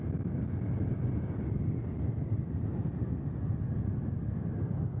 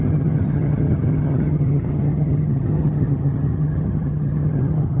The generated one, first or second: second